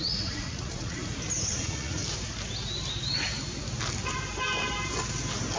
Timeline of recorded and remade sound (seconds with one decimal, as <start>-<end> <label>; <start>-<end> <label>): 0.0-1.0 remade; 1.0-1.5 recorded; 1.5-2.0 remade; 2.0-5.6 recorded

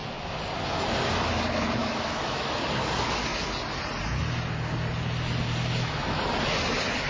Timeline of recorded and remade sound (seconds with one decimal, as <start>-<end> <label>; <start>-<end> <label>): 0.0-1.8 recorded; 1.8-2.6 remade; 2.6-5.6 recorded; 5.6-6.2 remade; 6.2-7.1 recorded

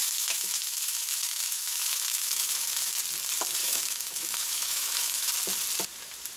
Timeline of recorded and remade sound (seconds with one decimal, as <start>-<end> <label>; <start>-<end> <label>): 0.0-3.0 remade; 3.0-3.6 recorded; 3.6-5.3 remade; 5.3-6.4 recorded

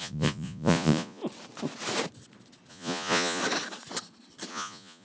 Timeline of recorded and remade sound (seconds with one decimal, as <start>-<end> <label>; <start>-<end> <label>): 0.0-1.2 remade; 1.2-2.7 recorded; 2.7-3.4 remade; 3.4-4.5 recorded; 4.5-5.0 remade